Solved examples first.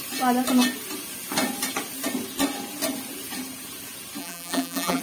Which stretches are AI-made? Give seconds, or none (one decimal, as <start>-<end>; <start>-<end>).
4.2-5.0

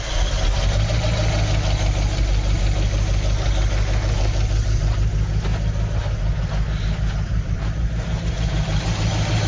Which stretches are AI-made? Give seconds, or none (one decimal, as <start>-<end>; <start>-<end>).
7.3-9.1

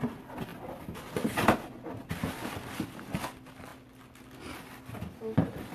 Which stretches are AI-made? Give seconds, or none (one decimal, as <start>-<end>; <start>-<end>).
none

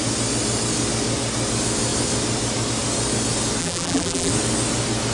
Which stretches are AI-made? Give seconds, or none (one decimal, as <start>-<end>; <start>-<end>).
3.6-4.3